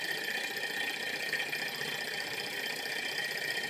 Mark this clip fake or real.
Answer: real